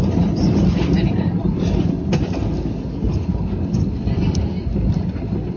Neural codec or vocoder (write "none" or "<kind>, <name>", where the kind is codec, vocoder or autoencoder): none